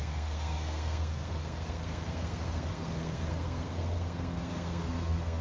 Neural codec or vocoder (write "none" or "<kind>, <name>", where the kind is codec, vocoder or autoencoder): codec, SNAC